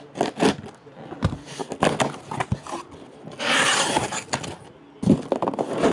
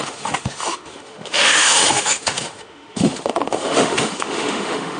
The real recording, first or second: first